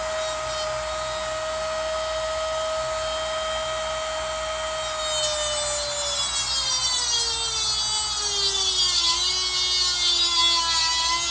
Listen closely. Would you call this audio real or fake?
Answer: real